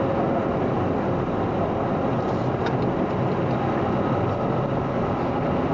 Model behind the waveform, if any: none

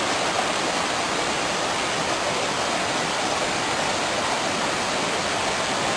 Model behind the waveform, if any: none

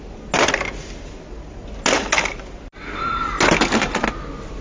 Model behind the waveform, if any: none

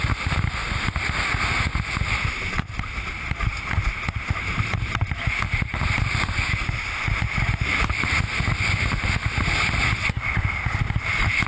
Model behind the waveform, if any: none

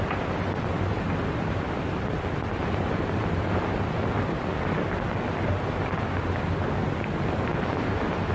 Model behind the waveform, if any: none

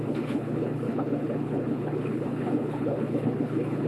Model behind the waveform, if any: codec, HILCodec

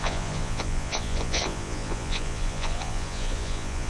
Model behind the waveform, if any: vocoder, Vocos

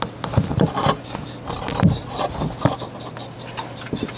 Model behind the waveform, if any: none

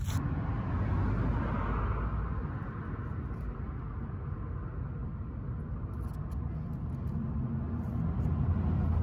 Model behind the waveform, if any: none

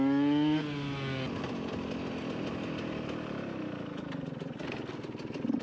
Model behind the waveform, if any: none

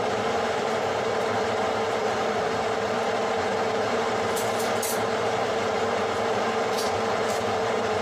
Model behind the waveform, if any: vocoder, BigVGAN v2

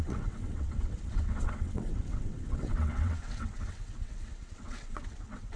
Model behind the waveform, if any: vocoder, WaveNeXt